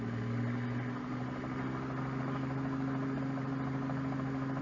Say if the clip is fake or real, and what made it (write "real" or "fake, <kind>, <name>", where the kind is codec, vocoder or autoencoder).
real